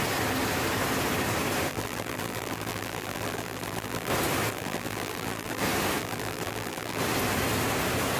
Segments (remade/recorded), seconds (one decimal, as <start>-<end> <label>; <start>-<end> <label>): 0.0-1.7 recorded; 1.7-4.1 remade; 4.1-4.5 recorded; 4.5-5.6 remade; 5.6-6.0 recorded; 6.0-7.0 remade; 7.0-8.2 recorded